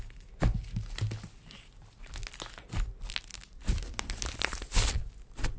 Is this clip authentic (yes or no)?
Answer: yes